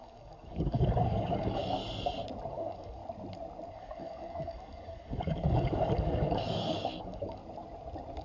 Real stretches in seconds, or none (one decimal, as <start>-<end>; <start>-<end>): 1.8-2.5; 3.0-3.7; 7.4-8.2